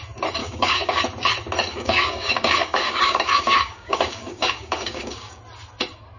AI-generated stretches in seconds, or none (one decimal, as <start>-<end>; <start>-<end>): 0.4-1.0; 1.7-5.4